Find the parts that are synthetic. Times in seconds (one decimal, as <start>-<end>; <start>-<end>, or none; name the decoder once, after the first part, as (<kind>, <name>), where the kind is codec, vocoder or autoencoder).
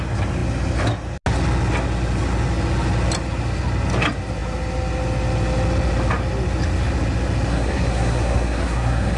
7.5-9.2 (codec, SNAC)